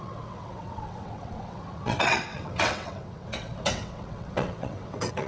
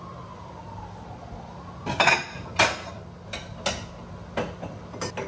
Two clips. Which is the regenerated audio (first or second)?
first